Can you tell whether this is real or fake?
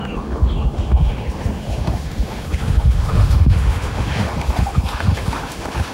fake